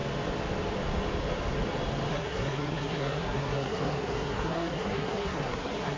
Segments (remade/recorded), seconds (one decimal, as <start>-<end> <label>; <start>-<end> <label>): 0.0-2.1 recorded; 2.1-6.0 remade